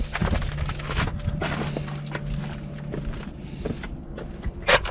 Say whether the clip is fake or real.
real